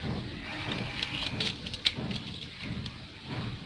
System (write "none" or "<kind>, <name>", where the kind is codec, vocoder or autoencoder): vocoder, BigVGAN v2